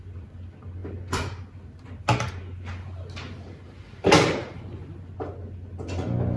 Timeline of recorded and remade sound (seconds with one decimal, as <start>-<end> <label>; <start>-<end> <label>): 0.0-6.4 recorded